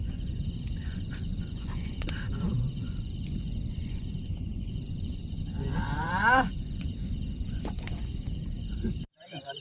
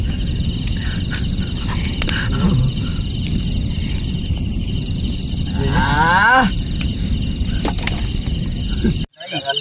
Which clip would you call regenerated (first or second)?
first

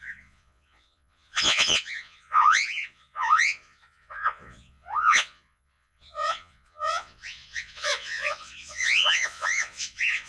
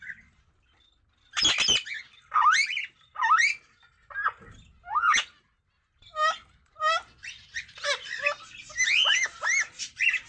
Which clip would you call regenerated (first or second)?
first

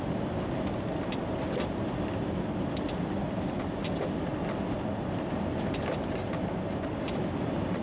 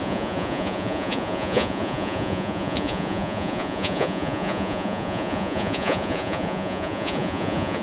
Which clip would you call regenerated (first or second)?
second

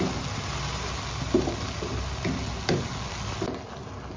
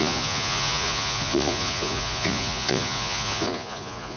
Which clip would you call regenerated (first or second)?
second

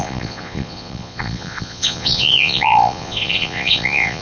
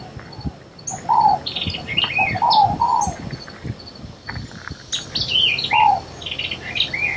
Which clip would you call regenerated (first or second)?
first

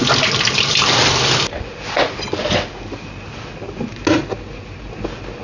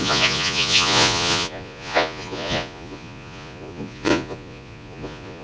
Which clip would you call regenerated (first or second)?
second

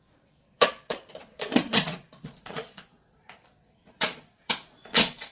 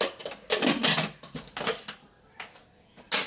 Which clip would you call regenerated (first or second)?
first